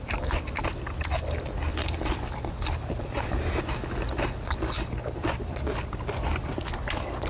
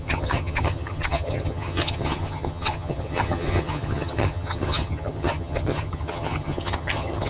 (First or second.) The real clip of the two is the first